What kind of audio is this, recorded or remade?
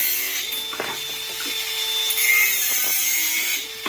recorded